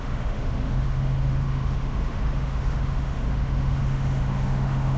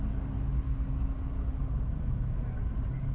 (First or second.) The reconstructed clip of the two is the first